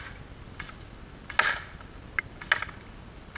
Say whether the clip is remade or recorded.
recorded